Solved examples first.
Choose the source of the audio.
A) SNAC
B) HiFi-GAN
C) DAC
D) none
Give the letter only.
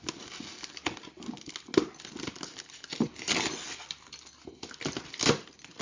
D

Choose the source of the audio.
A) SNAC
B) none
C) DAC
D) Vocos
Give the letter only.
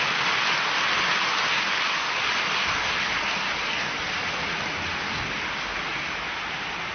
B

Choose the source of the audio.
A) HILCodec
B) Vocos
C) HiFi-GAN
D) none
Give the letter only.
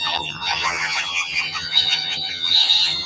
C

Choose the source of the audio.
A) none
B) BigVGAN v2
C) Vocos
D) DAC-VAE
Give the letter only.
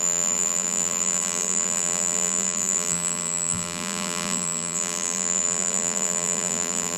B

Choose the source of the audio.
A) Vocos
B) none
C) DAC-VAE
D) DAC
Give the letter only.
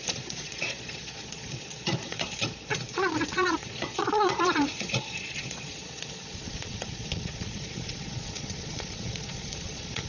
A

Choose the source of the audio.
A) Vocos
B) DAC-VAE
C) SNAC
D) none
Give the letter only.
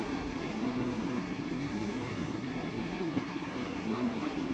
C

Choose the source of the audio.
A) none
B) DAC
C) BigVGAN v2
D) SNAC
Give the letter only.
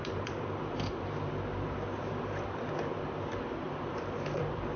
C